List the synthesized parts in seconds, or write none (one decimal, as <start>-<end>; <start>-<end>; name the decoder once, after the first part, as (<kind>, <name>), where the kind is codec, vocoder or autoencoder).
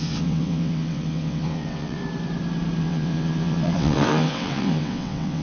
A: 0.0-2.0 (vocoder, WaveNeXt); 2.8-5.4